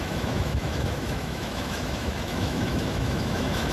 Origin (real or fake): fake